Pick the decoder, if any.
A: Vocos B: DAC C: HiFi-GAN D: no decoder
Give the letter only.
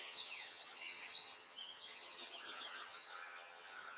C